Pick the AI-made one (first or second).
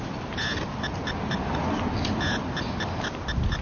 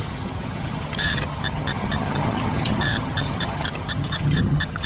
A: second